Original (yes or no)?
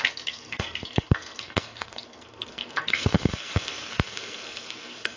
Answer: no